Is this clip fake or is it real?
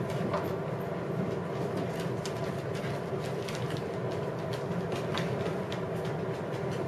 real